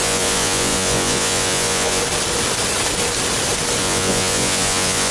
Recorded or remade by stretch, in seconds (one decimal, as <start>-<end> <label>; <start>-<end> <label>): 0.0-2.0 remade; 2.0-3.8 recorded; 3.8-5.1 remade